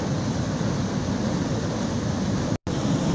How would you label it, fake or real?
real